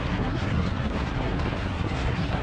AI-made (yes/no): yes